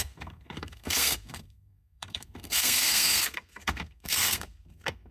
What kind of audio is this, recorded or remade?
remade